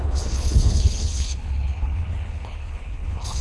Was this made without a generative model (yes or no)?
no